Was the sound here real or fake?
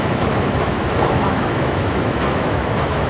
fake